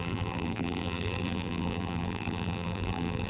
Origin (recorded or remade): remade